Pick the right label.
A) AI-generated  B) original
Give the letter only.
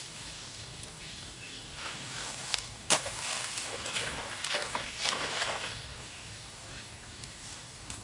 A